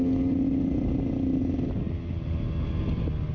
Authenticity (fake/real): real